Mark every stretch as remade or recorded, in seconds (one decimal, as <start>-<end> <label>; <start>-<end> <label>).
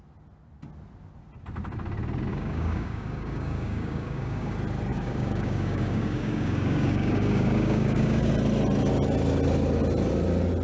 0.0-2.3 recorded; 2.3-4.5 remade; 4.5-4.9 recorded; 4.9-8.3 remade; 8.3-10.6 recorded